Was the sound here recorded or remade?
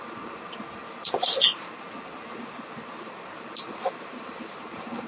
remade